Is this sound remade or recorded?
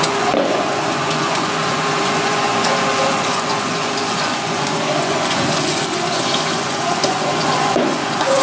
remade